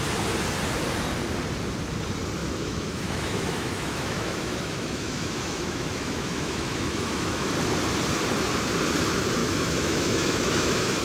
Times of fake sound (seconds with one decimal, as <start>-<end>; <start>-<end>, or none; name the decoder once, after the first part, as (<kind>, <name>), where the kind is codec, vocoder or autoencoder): 2.4-7.5 (autoencoder, DAC-VAE); 9.4-11.0